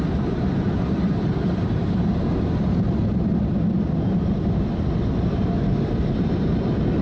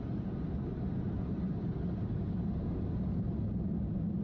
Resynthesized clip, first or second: first